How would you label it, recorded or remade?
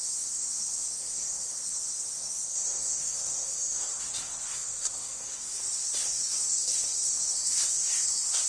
remade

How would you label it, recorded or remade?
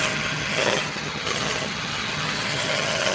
remade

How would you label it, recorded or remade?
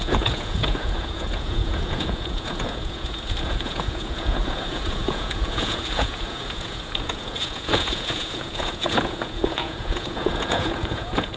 remade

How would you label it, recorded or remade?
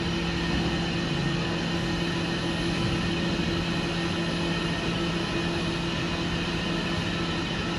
recorded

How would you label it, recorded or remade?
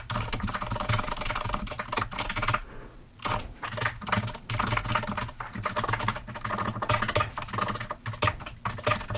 recorded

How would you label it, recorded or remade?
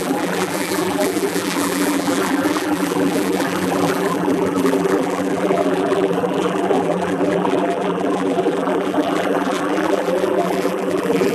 remade